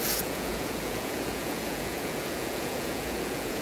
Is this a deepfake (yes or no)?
yes